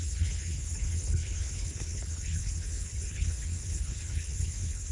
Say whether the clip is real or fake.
fake